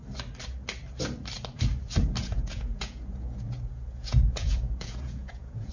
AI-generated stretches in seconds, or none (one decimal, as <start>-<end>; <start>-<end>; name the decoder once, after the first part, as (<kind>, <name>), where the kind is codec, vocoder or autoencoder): 2.2-5.7 (vocoder, Vocos)